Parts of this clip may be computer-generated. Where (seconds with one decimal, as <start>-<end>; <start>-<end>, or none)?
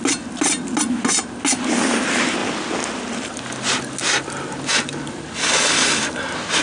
none